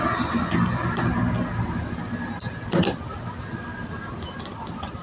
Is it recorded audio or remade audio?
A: recorded